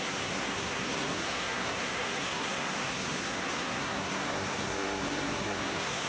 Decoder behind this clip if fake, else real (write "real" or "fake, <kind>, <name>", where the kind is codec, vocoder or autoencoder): fake, codec, SNAC